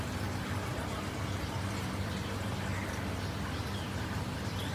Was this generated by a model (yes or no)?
no